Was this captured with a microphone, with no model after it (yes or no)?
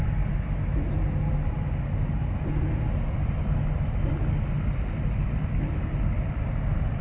yes